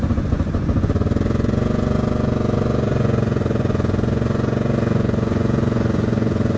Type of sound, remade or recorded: remade